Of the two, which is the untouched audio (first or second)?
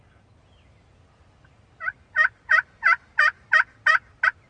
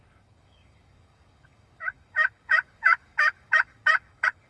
first